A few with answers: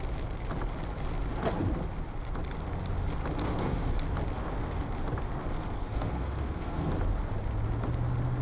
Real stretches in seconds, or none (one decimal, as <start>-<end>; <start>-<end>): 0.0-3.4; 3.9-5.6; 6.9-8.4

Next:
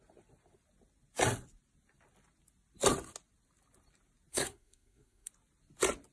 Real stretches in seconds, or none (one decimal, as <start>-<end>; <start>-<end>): 0.0-4.3; 5.3-6.1

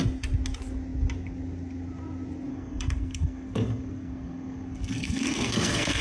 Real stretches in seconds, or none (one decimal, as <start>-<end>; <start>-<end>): 0.0-2.5

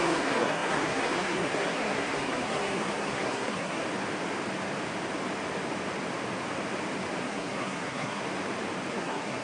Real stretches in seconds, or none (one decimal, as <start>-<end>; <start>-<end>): 3.8-7.2; 8.2-8.9

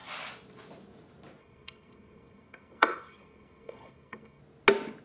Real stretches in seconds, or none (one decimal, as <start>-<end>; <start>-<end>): 0.0-1.4; 4.4-5.0